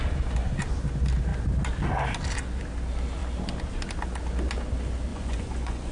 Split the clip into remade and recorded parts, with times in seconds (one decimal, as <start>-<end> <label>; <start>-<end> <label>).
0.0-5.1 recorded; 5.1-5.9 remade